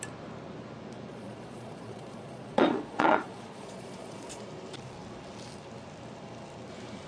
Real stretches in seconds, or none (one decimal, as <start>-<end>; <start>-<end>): 0.0-1.1; 4.4-7.1